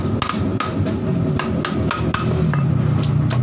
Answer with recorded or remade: recorded